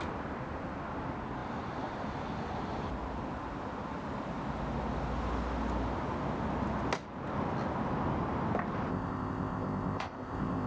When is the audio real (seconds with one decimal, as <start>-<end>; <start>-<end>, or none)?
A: 0.0-8.9